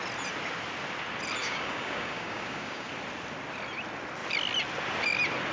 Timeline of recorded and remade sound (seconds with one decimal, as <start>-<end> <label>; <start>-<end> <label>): 0.0-1.4 recorded; 1.4-2.9 remade; 2.9-5.5 recorded